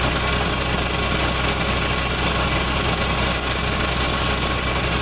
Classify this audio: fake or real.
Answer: real